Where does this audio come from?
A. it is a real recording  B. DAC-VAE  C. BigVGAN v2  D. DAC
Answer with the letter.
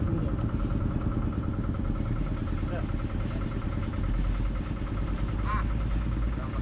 A